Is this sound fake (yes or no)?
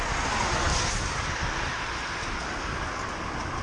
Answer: no